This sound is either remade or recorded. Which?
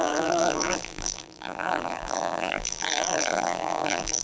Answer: remade